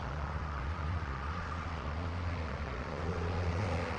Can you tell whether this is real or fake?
fake